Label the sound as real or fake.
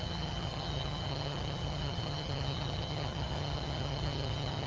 fake